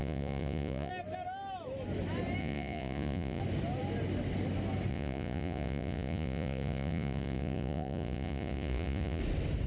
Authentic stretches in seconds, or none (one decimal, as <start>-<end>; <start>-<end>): 0.9-2.4; 3.4-4.9; 9.2-9.7